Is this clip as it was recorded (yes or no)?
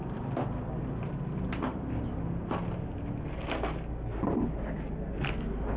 yes